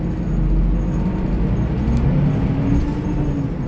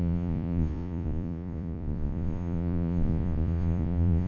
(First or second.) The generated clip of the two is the second